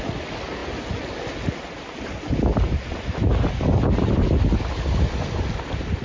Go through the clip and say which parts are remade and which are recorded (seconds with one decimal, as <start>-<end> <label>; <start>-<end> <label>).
0.0-6.0 recorded